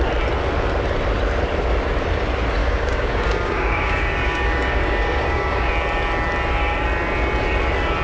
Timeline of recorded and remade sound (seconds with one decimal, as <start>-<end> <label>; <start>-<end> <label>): 0.0-2.6 recorded; 2.6-5.7 remade; 5.7-8.0 recorded